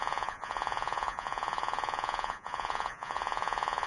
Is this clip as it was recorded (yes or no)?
no